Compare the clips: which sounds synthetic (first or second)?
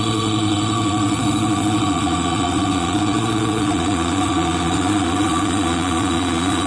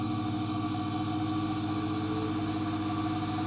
first